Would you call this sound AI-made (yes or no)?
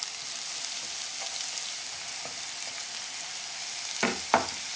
no